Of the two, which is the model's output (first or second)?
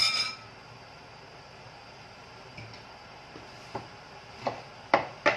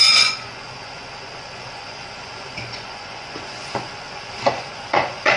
second